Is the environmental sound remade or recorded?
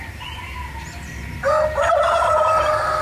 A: recorded